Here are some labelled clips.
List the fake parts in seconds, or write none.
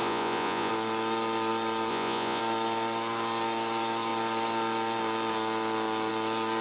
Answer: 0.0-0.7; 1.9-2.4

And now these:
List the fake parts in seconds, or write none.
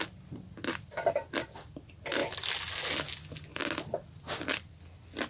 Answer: none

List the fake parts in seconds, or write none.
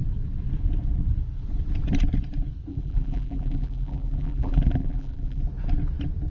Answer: 2.7-5.4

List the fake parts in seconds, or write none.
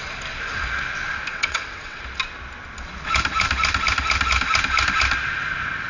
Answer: 1.3-2.0